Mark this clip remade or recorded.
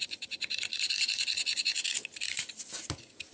recorded